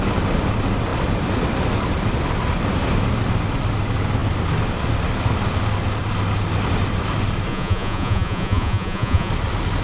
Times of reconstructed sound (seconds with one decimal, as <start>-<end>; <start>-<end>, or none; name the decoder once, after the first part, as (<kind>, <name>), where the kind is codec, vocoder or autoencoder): 7.5-9.3 (vocoder, Vocos)